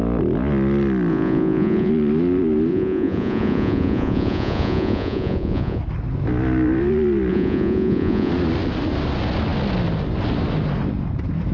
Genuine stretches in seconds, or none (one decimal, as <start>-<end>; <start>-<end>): 0.0-1.1; 1.9-2.7; 5.8-7.3; 8.3-11.5